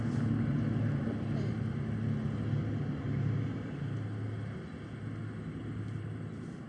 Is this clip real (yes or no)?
yes